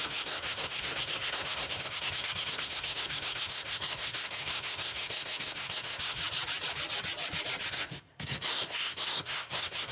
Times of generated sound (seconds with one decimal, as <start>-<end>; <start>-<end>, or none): 0.0-6.2; 7.7-9.9